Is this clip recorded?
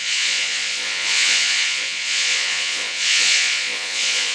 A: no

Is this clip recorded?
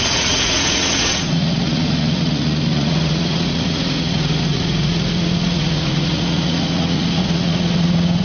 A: no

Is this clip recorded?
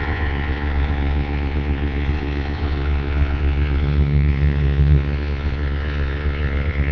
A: no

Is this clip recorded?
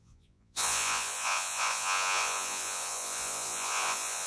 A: no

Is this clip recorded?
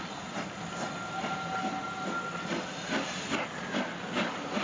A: yes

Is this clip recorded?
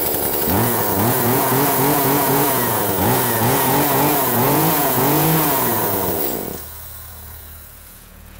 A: no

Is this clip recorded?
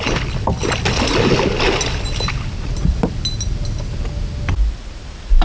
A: yes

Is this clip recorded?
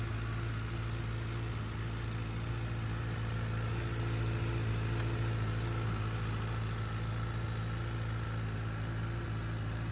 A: yes